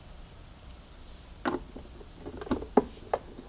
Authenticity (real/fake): real